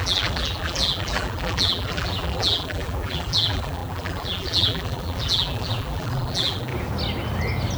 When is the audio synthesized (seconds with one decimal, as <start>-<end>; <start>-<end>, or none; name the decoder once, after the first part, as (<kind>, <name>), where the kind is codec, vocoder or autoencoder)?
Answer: 0.0-6.7 (vocoder, BigVGAN v2)